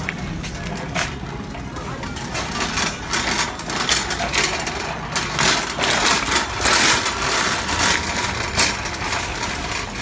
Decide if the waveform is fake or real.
real